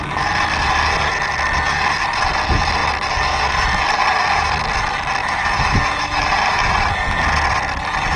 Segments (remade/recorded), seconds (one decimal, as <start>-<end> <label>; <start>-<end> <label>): 0.0-5.2 recorded; 5.2-6.2 remade; 6.2-8.2 recorded